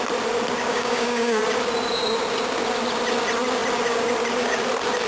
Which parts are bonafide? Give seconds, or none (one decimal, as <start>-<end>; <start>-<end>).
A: 0.0-0.7; 1.4-5.1